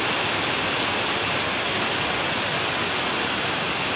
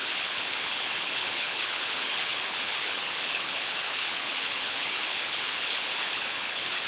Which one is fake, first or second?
second